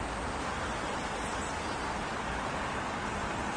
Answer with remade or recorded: recorded